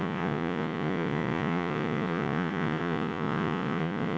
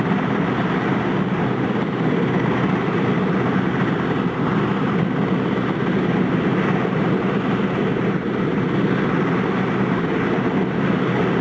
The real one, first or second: second